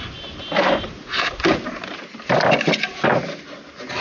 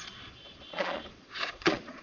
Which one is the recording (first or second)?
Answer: first